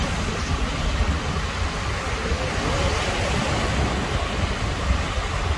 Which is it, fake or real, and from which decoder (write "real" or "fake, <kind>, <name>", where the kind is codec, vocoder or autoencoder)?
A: real